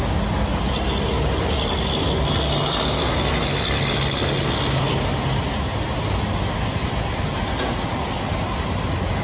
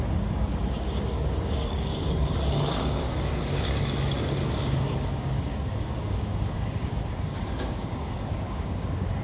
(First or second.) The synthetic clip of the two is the second